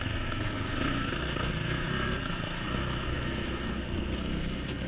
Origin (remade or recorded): remade